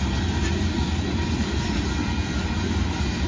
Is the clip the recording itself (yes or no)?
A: yes